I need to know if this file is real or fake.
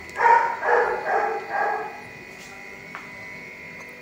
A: real